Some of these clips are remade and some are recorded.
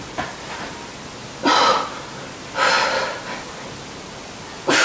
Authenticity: recorded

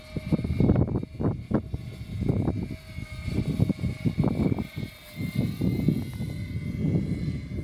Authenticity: recorded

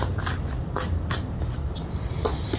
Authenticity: recorded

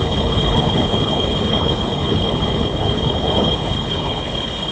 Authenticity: remade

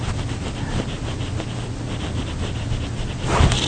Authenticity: recorded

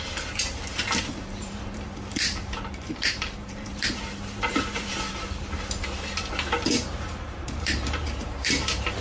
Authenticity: remade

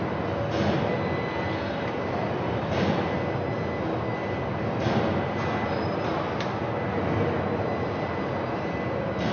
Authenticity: recorded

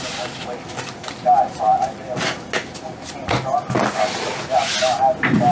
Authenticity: recorded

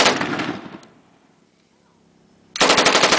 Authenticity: recorded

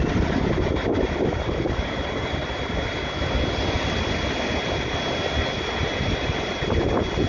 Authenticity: recorded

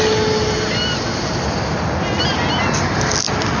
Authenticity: recorded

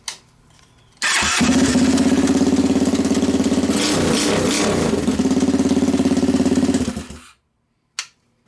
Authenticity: recorded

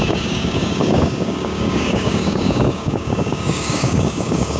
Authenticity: remade